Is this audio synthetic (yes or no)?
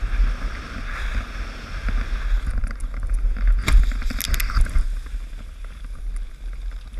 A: no